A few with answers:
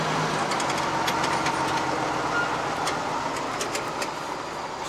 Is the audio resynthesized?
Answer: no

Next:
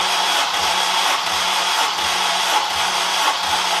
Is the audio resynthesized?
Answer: no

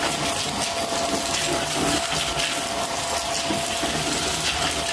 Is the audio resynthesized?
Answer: no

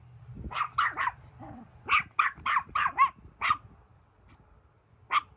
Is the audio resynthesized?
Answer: no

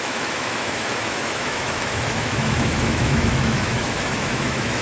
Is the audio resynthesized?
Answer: yes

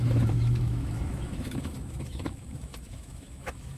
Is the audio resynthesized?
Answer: yes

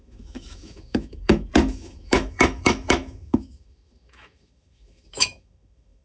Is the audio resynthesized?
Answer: yes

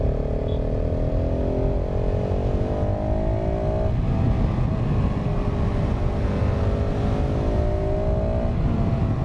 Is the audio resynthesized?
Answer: no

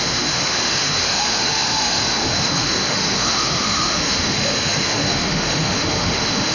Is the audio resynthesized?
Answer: yes